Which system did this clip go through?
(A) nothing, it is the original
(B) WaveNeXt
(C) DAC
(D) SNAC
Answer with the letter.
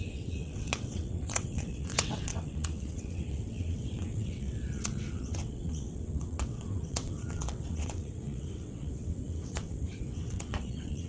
B